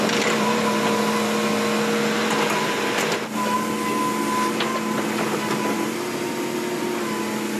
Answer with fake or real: real